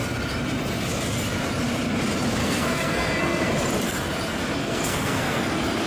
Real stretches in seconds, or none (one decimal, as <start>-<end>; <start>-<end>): 0.0-2.4; 3.5-4.6; 5.5-5.9